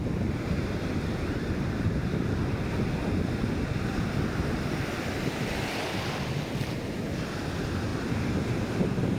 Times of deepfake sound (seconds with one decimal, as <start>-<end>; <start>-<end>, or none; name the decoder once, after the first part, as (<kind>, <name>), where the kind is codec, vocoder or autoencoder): none